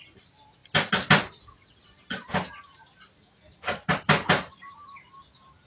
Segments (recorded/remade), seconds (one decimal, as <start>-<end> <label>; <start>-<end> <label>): 0.0-0.6 remade; 0.6-4.0 recorded; 4.0-5.7 remade